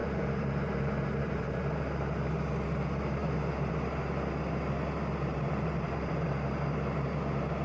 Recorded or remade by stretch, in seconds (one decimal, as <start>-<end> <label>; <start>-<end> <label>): 0.0-1.6 remade; 1.6-5.3 recorded; 5.3-6.1 remade; 6.1-7.6 recorded